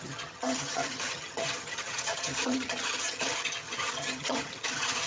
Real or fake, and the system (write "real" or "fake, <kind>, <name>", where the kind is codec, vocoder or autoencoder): fake, vocoder, HiFi-GAN